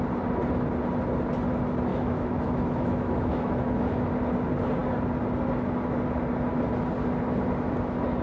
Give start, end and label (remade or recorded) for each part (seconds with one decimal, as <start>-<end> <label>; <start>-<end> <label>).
0.0-1.9 recorded; 1.9-4.1 remade; 4.1-8.2 recorded